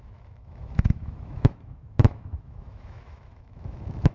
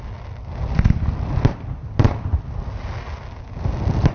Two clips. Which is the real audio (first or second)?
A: second